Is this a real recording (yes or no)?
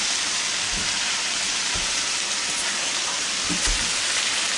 yes